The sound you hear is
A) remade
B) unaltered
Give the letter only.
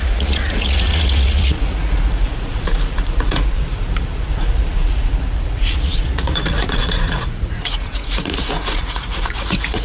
A